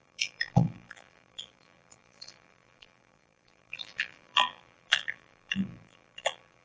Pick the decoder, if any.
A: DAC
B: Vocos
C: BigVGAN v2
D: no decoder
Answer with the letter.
C